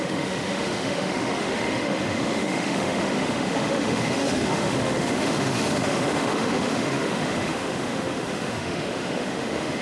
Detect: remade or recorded remade